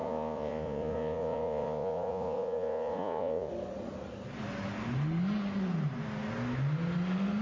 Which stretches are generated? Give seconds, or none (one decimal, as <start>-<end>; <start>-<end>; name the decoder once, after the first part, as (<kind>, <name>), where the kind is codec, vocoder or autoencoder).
0.0-3.5 (vocoder, Vocos)